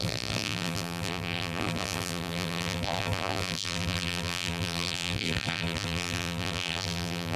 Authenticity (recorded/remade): remade